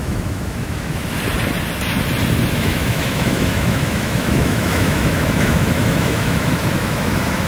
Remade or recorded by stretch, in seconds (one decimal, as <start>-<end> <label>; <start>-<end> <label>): 0.0-1.0 remade; 1.0-2.5 recorded; 2.5-7.5 remade